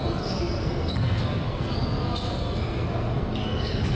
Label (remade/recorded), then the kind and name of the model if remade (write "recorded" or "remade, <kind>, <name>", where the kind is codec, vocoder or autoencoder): remade, codec, SNAC